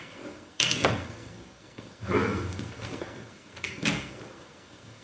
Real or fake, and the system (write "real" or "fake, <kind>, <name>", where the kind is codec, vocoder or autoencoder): fake, codec, SNAC